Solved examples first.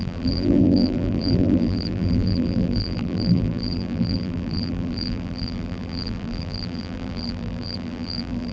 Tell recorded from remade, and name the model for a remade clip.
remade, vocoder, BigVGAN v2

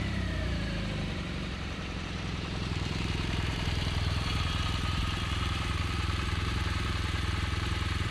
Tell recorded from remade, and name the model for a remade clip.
remade, vocoder, BigVGAN v2